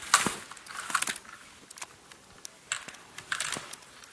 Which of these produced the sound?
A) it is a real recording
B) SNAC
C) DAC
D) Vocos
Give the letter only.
A